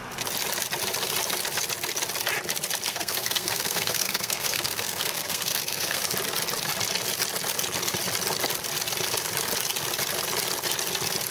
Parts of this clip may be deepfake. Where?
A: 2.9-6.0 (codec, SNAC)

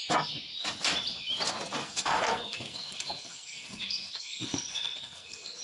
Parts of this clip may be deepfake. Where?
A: 1.8-5.6 (codec, SNAC)

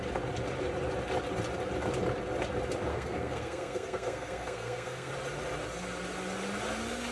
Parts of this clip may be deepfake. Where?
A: 2.9-5.1 (codec, SNAC)

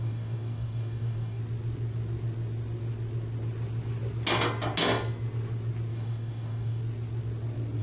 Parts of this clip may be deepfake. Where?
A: 0.0-1.4 (codec, DAC); 5.9-6.8

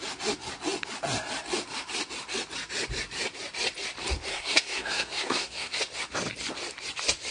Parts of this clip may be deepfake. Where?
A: 4.3-5.8 (codec, SNAC)

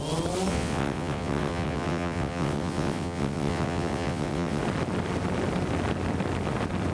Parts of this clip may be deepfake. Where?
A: 0.5-4.6 (vocoder, WaveNeXt)